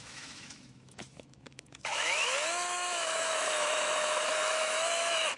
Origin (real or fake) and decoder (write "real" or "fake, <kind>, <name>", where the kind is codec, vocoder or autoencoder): fake, autoencoder, DAC-VAE